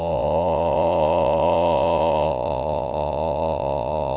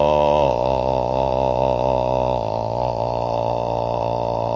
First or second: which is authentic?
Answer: second